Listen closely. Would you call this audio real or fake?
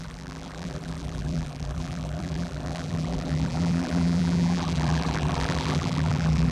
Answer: fake